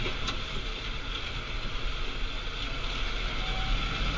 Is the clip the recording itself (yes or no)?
yes